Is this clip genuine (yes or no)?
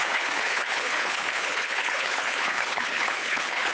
no